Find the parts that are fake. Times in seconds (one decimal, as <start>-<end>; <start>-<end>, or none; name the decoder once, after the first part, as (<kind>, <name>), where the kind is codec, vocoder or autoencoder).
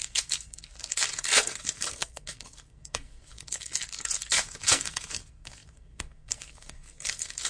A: 0.0-7.5 (codec, SNAC)